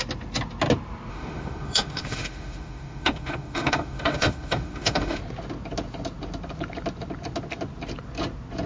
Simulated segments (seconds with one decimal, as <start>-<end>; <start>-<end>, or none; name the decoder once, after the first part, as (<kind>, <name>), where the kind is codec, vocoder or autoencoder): 1.1-5.2 (autoencoder, DAC-VAE)